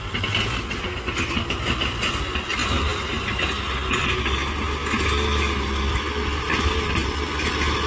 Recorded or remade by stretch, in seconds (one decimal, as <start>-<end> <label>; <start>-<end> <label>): 0.0-7.9 recorded